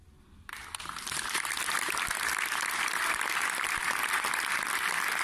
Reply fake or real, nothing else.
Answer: fake